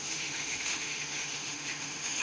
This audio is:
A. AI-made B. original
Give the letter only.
A